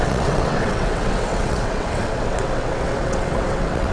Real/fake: fake